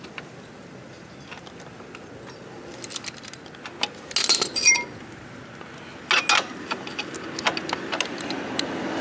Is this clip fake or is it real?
real